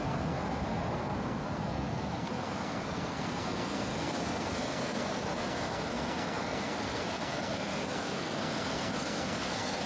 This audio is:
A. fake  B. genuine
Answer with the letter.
A